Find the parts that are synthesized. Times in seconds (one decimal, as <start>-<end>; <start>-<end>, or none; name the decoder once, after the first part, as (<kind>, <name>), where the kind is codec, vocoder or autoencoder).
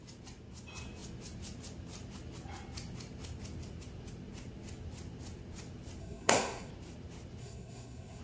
6.0-6.7 (codec, SNAC); 7.4-8.2